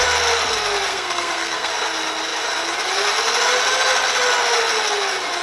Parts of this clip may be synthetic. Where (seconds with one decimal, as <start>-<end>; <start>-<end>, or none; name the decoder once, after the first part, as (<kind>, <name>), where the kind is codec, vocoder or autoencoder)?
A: 0.9-1.7 (codec, SNAC)